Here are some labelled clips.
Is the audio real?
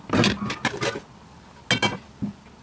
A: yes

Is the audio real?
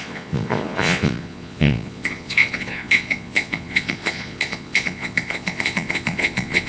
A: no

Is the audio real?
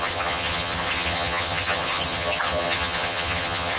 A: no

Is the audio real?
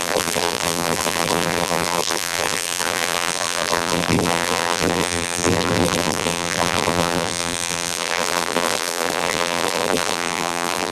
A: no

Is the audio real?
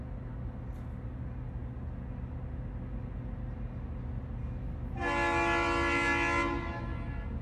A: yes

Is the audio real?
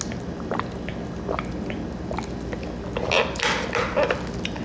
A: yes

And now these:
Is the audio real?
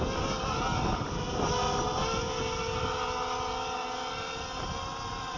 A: yes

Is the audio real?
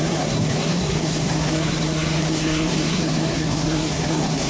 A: no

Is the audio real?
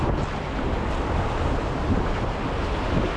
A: yes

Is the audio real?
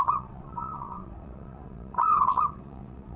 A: no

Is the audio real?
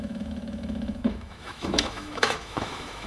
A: no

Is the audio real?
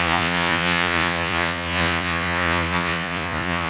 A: no